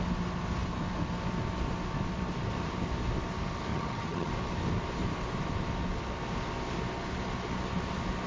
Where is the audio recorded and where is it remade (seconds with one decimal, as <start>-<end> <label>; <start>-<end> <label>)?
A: 0.0-3.7 recorded; 3.7-4.3 remade; 4.3-8.3 recorded